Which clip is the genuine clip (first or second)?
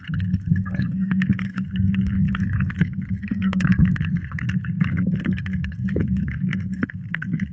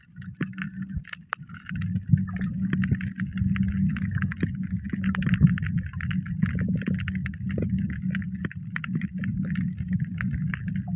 second